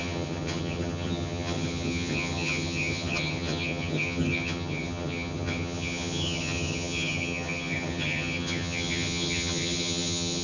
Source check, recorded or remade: remade